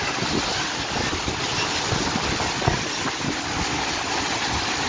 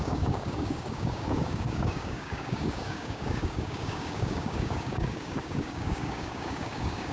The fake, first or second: second